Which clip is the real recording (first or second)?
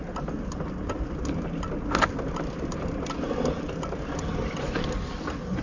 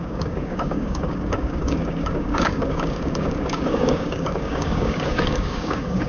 first